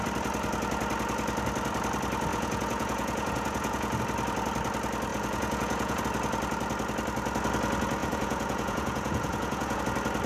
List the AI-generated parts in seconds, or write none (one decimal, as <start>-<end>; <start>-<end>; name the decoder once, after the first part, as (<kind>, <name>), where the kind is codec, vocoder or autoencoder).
2.3-4.0 (vocoder, Vocos); 5.1-6.0; 8.0-9.8